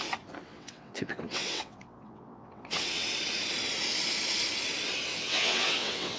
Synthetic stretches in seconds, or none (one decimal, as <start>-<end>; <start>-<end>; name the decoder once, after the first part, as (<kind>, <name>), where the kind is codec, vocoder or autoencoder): 0.5-3.1 (vocoder, WaveNeXt); 5.1-6.2